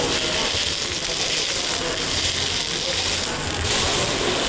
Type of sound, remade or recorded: recorded